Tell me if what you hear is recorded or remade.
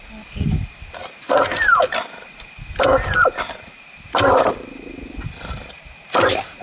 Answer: recorded